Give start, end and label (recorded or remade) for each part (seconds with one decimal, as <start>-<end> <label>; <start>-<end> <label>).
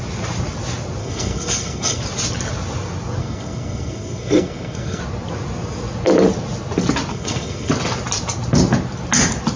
0.0-1.0 recorded; 1.0-2.0 remade; 2.0-3.2 recorded; 3.2-5.0 remade; 5.0-7.1 recorded; 7.1-7.7 remade; 7.7-9.6 recorded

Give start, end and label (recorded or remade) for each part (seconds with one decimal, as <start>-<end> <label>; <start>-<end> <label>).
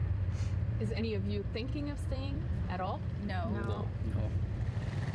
0.0-1.0 remade; 1.0-1.7 recorded; 1.7-5.1 remade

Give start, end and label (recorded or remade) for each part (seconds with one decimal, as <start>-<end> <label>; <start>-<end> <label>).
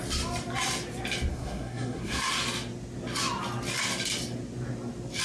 0.0-1.3 recorded; 1.3-2.2 remade; 2.2-5.2 recorded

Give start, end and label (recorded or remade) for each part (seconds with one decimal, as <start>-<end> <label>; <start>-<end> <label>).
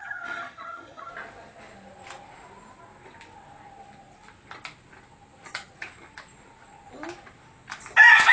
0.0-1.1 remade; 1.1-8.3 recorded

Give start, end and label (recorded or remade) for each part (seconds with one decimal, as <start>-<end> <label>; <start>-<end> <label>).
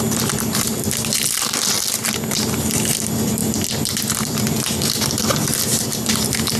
0.0-6.6 recorded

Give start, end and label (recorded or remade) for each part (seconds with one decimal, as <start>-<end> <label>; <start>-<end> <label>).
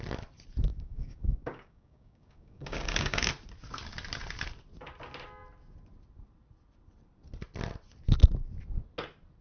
0.0-0.7 recorded; 0.7-3.3 remade; 3.3-9.4 recorded